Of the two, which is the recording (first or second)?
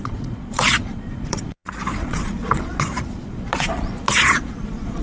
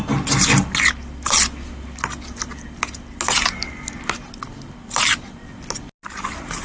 second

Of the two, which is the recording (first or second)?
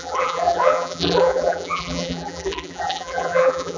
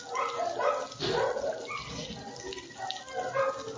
second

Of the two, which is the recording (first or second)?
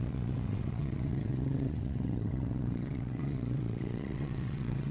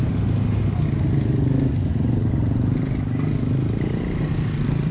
second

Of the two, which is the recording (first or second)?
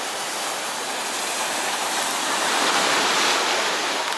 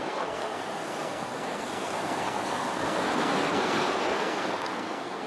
first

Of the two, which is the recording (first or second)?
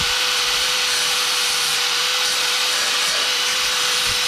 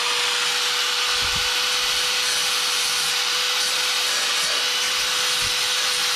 second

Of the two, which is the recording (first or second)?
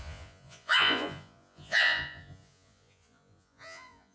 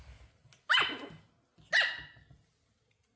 second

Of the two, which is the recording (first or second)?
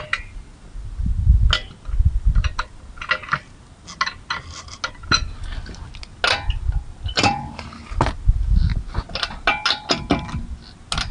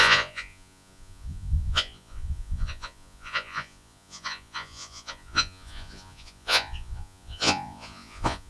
first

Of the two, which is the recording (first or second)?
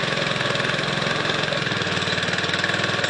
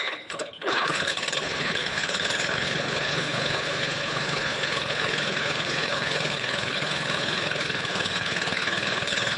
first